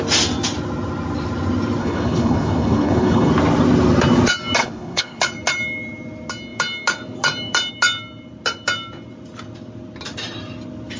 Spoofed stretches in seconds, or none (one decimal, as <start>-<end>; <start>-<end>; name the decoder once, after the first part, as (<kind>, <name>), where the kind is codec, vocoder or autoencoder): 1.8-3.3 (codec, HILCodec); 4.6-5.2